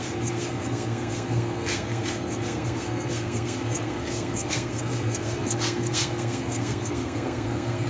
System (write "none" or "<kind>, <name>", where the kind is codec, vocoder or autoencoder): codec, SNAC